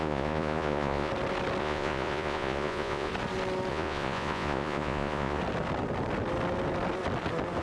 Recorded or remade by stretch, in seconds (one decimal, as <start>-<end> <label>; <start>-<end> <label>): 0.0-1.1 remade; 1.1-1.6 recorded; 1.6-3.1 remade; 3.1-3.7 recorded; 3.7-5.4 remade; 5.4-7.6 recorded

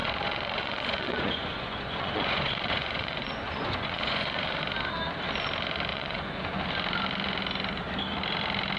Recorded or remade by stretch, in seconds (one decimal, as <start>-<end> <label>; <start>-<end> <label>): 0.0-4.6 remade; 4.6-5.9 recorded; 5.9-6.6 remade; 6.6-8.8 recorded

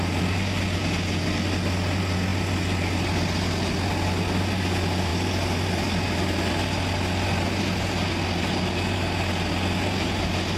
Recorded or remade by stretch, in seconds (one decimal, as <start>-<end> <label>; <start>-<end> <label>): 0.0-10.6 recorded

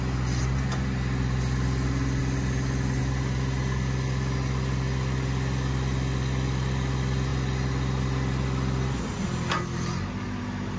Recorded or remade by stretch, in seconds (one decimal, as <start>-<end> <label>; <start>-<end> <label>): 0.0-10.8 recorded